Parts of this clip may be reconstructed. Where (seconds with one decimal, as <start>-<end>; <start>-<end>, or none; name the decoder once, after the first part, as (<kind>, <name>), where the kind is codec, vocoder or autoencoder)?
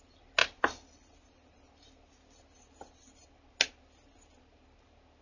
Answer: none